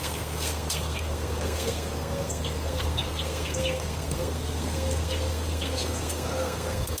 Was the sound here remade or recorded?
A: remade